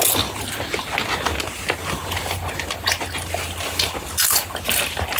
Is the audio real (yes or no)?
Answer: yes